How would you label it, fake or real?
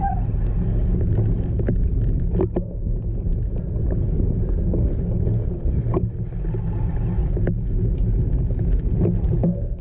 real